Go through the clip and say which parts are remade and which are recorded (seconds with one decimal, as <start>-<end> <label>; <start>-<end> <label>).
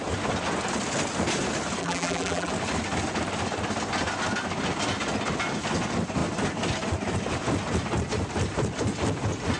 0.0-1.8 recorded; 1.8-2.5 remade; 2.5-9.6 recorded